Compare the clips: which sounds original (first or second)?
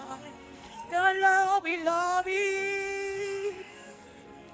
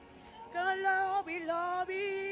second